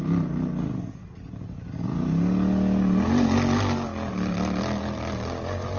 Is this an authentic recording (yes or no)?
yes